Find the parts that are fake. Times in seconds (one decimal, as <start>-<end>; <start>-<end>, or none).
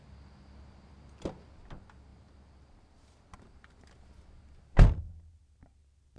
none